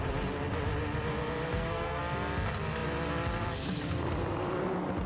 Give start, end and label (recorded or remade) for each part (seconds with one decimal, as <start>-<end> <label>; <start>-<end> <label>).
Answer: 0.0-1.5 recorded; 1.5-2.0 remade; 2.0-5.1 recorded

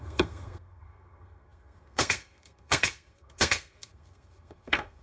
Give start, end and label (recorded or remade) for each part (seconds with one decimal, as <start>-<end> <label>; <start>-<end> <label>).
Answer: 0.0-5.0 remade

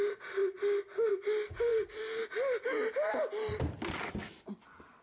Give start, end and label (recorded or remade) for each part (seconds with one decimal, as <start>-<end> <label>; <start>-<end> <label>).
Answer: 0.0-5.0 recorded

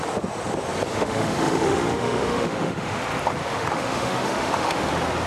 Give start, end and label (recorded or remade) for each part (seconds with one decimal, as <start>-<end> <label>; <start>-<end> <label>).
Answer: 0.0-0.9 recorded; 0.9-3.0 remade; 3.0-3.4 recorded; 3.4-4.8 remade; 4.8-5.3 recorded

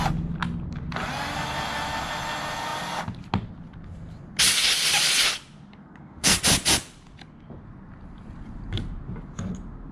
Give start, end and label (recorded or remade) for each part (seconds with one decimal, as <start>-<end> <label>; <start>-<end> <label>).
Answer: 0.0-5.8 recorded; 5.8-6.4 remade; 6.4-9.9 recorded